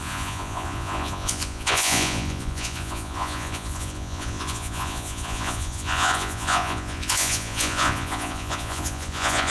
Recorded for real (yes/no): no